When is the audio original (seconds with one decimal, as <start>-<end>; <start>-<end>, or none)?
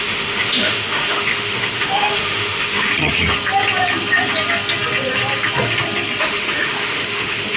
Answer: 2.9-6.2